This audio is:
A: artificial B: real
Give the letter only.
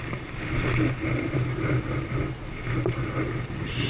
B